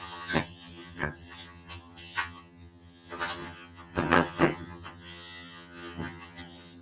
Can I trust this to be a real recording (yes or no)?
no